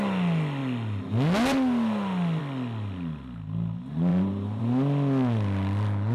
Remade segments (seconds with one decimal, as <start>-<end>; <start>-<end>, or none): 4.1-4.6

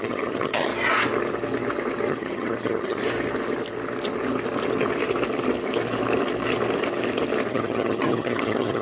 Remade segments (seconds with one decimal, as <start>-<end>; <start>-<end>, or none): 0.0-0.7; 2.1-3.0; 7.5-8.8

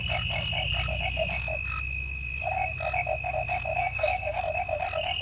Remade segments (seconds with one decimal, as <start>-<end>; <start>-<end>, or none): 3.8-4.4

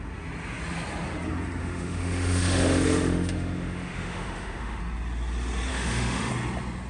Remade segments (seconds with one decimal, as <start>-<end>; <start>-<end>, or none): 1.6-4.8; 5.7-6.3